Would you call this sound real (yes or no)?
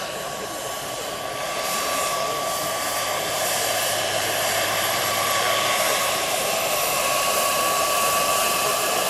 no